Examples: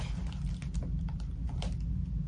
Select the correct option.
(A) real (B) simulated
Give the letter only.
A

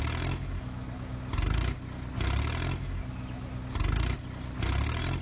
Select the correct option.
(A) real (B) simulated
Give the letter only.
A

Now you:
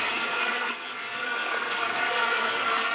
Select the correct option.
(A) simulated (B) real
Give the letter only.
A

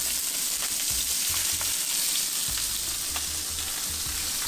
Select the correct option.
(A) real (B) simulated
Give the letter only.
A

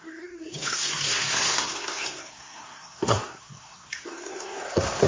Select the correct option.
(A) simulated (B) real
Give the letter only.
A